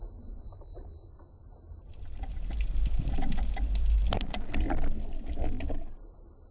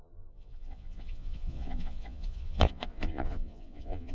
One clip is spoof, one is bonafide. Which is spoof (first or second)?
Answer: second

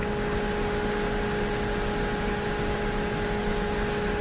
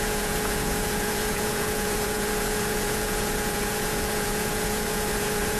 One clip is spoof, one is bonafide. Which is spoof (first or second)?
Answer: second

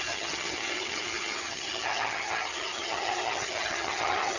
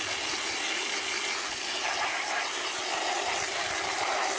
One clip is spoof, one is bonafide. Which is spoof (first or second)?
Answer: first